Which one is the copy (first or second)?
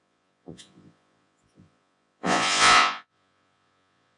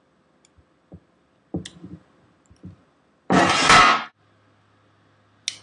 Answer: first